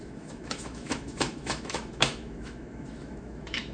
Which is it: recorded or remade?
remade